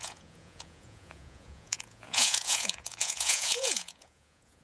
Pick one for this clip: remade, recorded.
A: remade